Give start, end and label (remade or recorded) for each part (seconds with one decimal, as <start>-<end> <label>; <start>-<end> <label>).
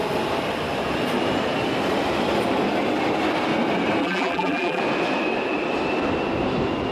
0.0-4.0 recorded; 4.0-4.8 remade; 4.8-6.9 recorded